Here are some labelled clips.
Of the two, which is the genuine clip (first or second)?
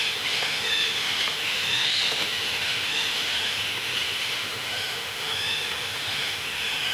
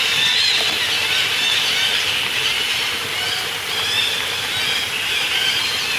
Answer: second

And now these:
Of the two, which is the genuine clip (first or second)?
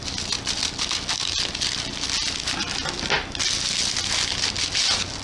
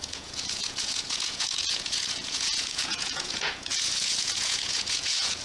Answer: first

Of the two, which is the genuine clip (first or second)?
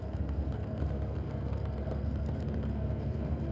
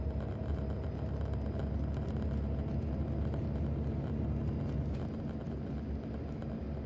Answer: second